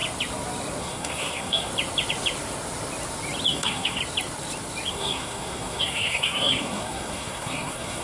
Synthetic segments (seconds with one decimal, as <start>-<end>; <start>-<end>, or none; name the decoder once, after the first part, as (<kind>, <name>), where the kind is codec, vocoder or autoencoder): 0.8-1.7 (codec, SNAC); 3.5-4.0; 4.9-8.0

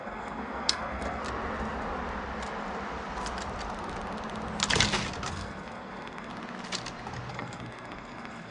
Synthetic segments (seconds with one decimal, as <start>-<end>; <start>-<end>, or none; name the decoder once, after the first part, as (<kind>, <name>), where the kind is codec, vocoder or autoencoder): 0.0-1.2 (codec, SNAC); 5.3-6.3; 7.3-8.5

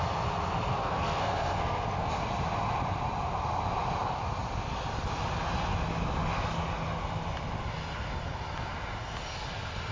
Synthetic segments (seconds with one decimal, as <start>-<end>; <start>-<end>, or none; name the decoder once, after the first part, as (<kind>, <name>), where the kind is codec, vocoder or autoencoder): 0.8-2.1 (codec, SNAC)

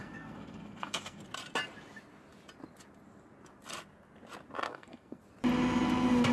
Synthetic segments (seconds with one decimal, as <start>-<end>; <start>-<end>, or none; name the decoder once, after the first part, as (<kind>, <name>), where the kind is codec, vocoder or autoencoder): 0.0-1.2 (codec, SNAC); 4.7-5.2